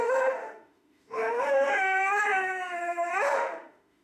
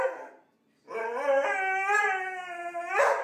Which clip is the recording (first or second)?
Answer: second